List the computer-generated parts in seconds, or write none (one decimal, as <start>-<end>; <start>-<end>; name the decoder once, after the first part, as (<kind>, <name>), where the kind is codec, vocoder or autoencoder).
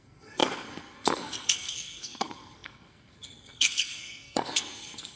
0.0-5.2 (codec, SNAC)